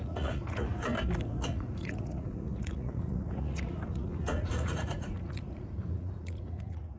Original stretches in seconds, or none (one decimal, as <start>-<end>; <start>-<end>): 0.7-1.5